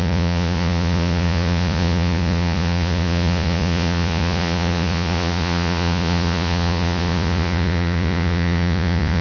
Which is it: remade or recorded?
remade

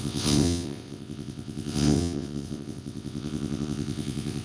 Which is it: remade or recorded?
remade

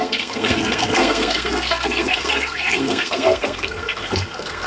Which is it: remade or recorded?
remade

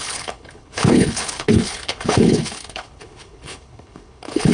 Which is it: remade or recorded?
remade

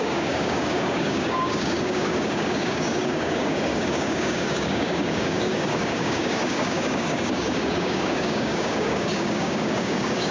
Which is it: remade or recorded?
remade